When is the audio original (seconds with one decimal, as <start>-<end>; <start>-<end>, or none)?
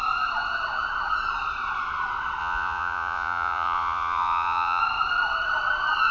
0.0-2.4; 4.8-6.1